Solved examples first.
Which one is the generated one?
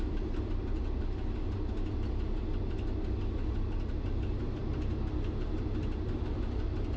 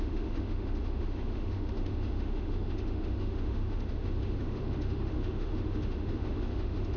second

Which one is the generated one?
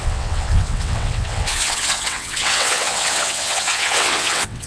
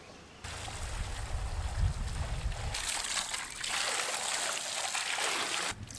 first